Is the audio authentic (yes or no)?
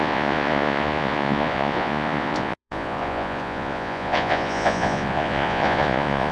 no